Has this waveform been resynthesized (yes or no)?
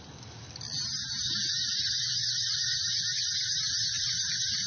no